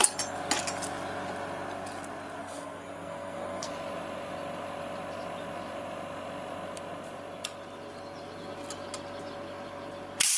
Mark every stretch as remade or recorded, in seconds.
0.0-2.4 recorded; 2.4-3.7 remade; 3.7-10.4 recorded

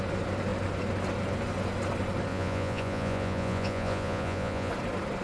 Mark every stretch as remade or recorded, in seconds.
0.0-2.3 recorded; 2.3-4.7 remade; 4.7-5.2 recorded

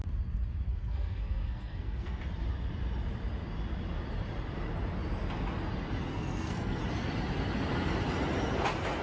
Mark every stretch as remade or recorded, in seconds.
0.0-0.7 recorded; 0.7-2.2 remade; 2.2-6.1 recorded; 6.1-6.8 remade; 6.8-9.0 recorded

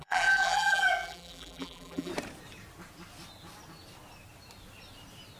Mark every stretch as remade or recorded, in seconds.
0.0-2.1 remade; 2.1-5.4 recorded

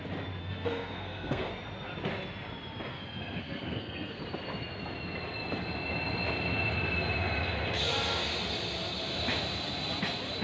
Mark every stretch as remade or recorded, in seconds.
0.0-0.4 recorded; 0.4-1.5 remade; 1.5-2.9 recorded; 2.9-4.2 remade; 4.2-10.4 recorded